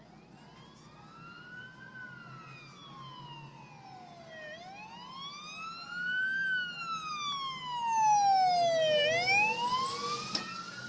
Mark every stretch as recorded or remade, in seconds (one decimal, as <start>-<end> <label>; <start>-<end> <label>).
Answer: 0.0-10.9 recorded